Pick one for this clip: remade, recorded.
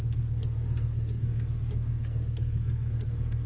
remade